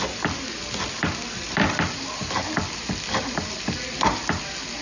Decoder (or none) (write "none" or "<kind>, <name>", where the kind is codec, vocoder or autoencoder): none